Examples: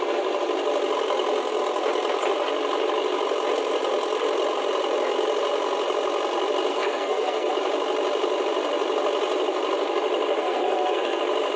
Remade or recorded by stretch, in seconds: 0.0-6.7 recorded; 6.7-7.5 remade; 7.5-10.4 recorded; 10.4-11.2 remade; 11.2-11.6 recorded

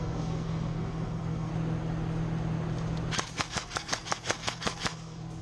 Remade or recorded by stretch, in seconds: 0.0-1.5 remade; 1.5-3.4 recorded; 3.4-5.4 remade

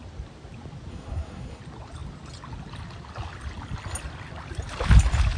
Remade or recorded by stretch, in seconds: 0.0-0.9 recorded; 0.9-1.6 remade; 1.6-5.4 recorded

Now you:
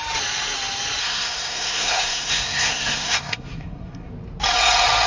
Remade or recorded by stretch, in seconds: 0.0-1.0 recorded; 1.0-4.1 remade; 4.1-5.1 recorded

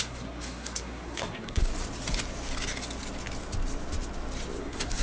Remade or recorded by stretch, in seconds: 0.0-1.7 remade; 1.7-4.6 recorded; 4.6-5.0 remade